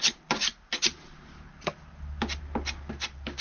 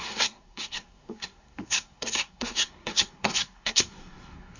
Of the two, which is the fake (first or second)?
second